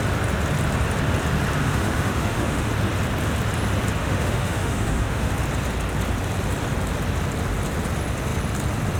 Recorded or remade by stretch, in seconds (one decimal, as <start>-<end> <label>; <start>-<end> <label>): 0.0-1.6 recorded; 1.6-2.7 remade; 2.7-4.0 recorded; 4.0-5.3 remade; 5.3-9.0 recorded